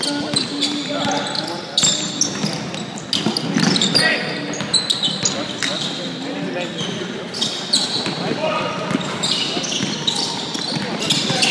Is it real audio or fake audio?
real